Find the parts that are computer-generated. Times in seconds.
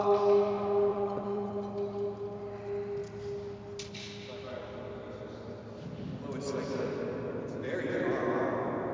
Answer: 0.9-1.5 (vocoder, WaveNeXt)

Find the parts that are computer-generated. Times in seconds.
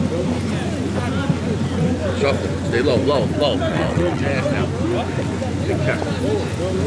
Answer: 3.7-4.2 (vocoder, WaveNeXt)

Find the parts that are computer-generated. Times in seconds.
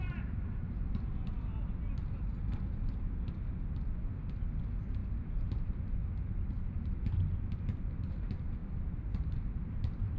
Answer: 0.0-1.1 (vocoder, BigVGAN v2); 4.6-5.0; 8.1-10.2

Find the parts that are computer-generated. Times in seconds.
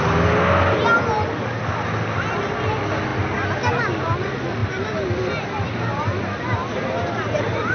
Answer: none